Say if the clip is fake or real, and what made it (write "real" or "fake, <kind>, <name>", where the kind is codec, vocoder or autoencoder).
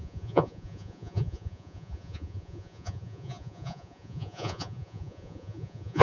fake, vocoder, Vocos